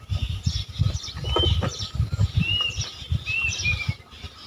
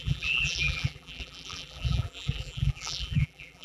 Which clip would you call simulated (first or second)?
second